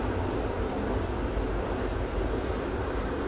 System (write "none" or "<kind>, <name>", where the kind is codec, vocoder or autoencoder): none